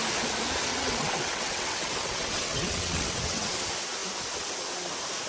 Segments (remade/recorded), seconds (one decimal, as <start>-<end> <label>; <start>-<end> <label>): 0.0-0.7 recorded; 0.7-3.5 remade; 3.5-5.3 recorded